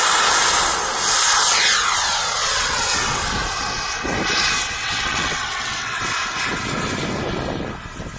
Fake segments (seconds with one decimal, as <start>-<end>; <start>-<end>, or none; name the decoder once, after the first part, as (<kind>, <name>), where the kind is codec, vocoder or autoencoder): 2.4-3.2 (vocoder, WaveNeXt); 4.8-6.0